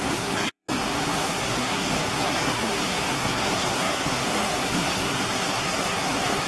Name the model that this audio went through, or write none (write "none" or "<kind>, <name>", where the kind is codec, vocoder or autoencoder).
codec, SNAC